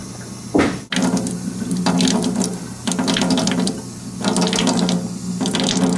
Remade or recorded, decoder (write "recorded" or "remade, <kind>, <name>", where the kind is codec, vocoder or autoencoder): recorded